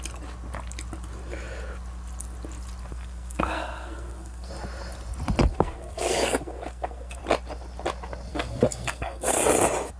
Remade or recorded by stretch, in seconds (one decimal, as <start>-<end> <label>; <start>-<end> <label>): 0.0-2.9 recorded; 2.9-4.5 remade; 4.5-5.5 recorded; 5.5-7.2 remade; 7.2-8.3 recorded; 8.3-9.4 remade; 9.4-10.0 recorded